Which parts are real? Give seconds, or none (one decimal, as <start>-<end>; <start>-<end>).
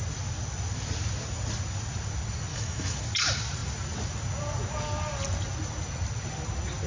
0.0-2.5; 3.0-6.9